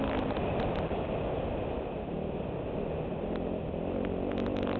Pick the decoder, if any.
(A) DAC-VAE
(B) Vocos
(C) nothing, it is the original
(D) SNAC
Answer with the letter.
C